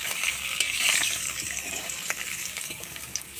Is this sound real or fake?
fake